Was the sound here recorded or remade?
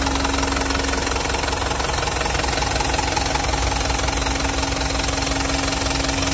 recorded